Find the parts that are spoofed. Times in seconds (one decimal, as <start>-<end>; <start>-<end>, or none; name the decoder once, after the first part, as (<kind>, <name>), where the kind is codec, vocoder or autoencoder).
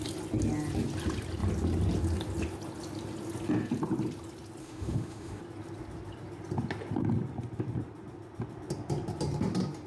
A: 4.6-5.4 (autoencoder, DAC-VAE)